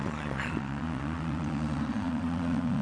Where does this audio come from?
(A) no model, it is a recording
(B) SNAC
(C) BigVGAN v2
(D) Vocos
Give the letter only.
D